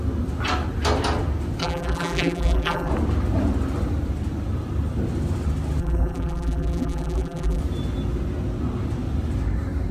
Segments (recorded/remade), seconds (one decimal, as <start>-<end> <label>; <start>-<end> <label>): 0.0-1.6 recorded; 1.6-2.9 remade; 2.9-5.8 recorded; 5.8-7.6 remade; 7.6-9.9 recorded